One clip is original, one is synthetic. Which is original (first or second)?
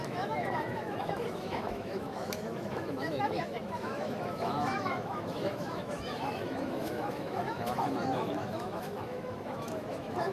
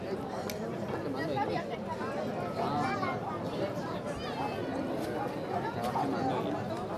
second